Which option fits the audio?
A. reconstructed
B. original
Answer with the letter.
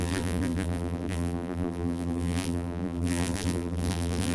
A